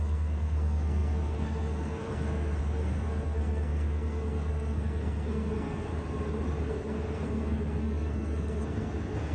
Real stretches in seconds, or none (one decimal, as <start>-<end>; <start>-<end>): 5.9-6.7